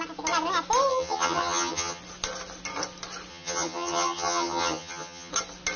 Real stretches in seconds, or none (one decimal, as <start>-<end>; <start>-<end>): 0.0-0.9; 2.0-3.3; 5.3-5.8